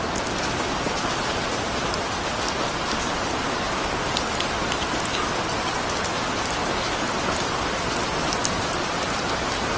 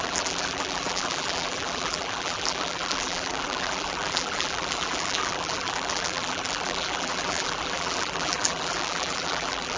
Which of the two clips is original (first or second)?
first